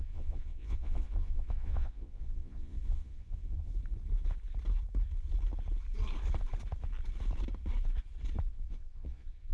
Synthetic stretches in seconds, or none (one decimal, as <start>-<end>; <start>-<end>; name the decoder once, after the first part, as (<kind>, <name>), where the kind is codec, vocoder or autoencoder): 0.0-3.7 (vocoder, Vocos); 8.5-9.5